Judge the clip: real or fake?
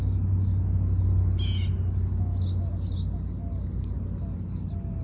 real